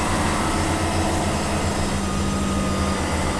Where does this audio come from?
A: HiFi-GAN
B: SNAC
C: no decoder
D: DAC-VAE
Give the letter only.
C